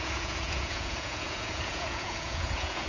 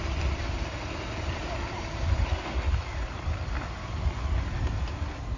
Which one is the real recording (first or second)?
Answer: second